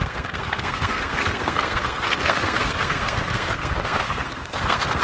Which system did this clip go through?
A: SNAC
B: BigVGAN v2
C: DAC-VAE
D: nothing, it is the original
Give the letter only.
A